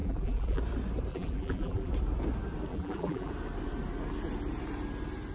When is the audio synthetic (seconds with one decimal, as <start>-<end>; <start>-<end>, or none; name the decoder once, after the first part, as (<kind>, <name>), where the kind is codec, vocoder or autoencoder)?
0.0-0.6 (vocoder, BigVGAN v2); 1.1-1.9; 2.7-3.3